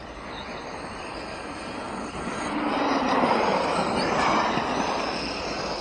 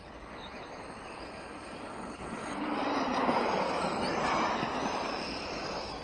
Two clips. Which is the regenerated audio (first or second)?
second